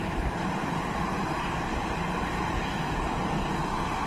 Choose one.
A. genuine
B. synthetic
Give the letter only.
B